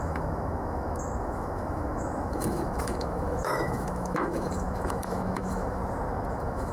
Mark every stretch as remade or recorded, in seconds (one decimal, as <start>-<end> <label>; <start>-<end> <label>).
0.0-5.8 remade; 5.8-6.3 recorded; 6.3-6.7 remade